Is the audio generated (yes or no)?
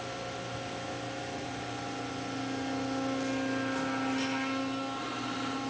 no